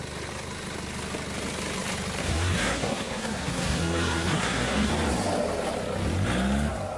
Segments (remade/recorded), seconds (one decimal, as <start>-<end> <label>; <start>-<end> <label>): 0.0-2.2 recorded; 2.2-4.9 remade; 4.9-7.0 recorded